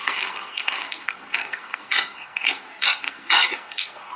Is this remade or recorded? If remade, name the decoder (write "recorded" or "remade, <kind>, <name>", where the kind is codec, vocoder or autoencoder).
remade, codec, SNAC